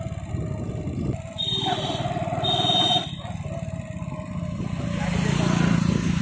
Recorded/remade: recorded